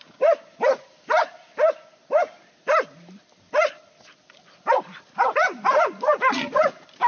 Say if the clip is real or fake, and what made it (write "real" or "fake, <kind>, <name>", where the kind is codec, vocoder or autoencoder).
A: real